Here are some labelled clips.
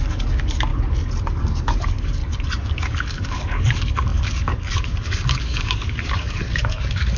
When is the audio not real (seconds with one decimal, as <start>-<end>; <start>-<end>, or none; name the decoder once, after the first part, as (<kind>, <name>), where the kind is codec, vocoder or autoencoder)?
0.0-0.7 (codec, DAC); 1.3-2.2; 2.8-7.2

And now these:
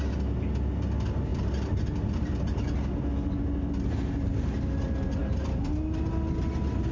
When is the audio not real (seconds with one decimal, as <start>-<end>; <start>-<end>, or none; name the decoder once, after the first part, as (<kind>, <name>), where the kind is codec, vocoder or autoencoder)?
none

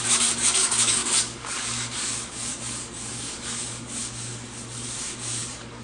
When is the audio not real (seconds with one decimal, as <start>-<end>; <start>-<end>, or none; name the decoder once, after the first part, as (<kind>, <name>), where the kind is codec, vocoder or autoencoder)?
0.0-5.8 (codec, DAC)